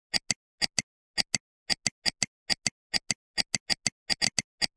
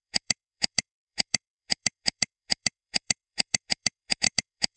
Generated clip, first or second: second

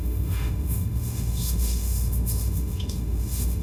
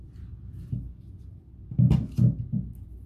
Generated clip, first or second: first